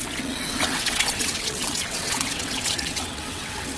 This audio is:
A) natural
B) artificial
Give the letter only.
B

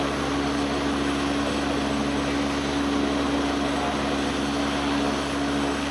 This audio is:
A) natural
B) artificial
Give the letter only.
A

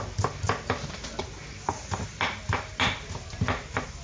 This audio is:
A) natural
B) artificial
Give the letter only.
A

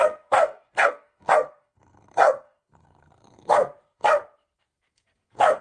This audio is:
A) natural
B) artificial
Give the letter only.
B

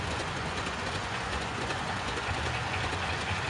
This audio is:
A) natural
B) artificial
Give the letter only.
B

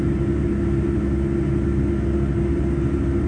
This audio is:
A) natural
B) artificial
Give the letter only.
A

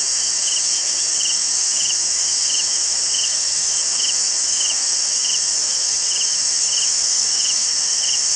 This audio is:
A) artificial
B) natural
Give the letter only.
A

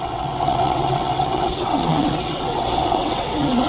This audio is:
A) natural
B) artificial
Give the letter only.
B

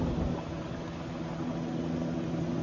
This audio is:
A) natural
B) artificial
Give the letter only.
A